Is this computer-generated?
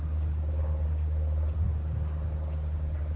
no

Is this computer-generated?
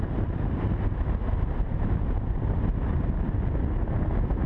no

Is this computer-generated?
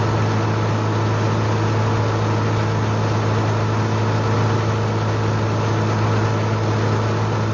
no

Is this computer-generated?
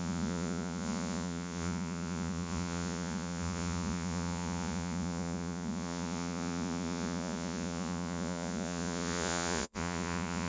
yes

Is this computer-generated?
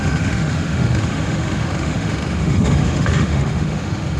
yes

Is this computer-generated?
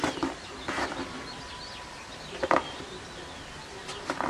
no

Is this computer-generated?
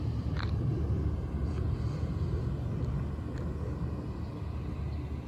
no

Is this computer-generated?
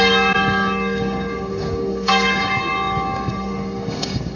yes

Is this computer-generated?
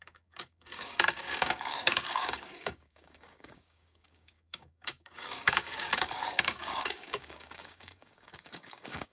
yes